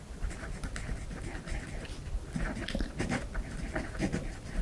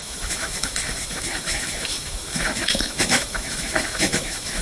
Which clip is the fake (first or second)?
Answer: second